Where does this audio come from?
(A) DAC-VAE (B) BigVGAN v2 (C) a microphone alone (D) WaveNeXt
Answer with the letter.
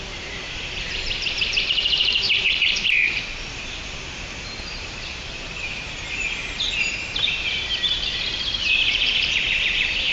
B